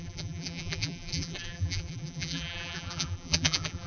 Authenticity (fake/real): fake